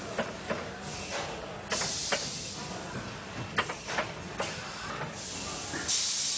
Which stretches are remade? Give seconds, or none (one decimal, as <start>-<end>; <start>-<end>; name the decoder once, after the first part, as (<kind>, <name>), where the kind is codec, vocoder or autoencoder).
none